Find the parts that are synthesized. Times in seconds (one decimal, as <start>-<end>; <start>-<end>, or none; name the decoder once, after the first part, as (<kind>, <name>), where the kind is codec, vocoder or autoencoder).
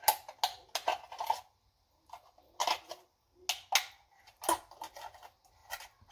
none